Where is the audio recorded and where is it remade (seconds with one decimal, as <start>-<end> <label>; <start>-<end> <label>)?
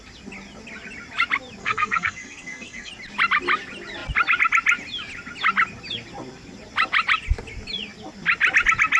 0.0-1.6 recorded; 1.6-2.9 remade; 2.9-9.0 recorded